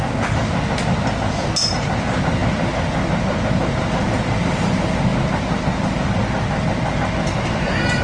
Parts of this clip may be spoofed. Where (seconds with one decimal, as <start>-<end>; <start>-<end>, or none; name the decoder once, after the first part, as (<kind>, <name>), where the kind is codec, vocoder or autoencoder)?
none